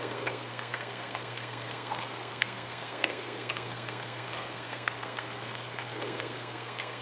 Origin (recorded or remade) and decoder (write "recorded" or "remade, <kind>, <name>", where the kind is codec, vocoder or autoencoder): remade, codec, SNAC